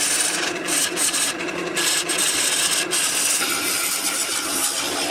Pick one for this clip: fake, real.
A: real